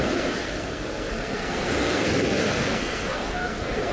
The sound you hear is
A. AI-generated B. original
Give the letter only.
A